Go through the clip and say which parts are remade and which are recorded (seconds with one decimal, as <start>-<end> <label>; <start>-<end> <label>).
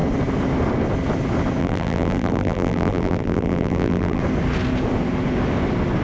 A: 0.0-1.6 recorded; 1.6-4.2 remade; 4.2-6.0 recorded